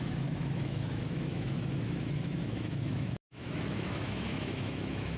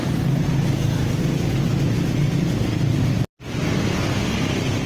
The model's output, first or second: first